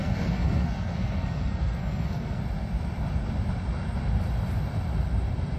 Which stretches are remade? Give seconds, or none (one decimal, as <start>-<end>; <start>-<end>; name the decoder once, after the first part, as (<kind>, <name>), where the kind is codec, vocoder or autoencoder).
0.0-2.4 (codec, SNAC)